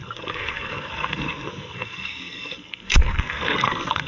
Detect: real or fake fake